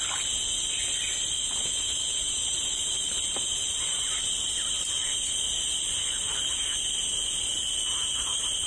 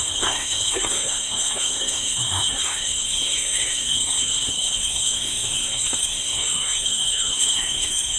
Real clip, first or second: first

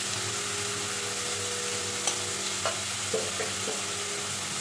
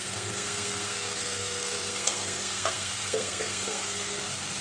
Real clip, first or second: first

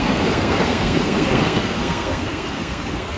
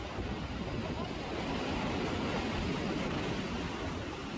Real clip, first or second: second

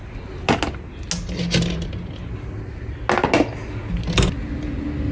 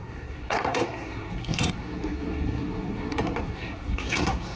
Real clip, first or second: first